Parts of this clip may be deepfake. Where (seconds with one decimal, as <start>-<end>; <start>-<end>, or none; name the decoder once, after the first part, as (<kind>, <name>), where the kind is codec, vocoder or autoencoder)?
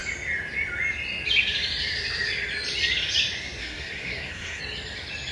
3.6-4.6 (codec, SNAC)